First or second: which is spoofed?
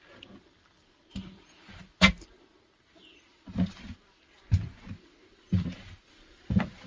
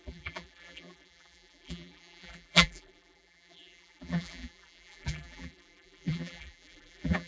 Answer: second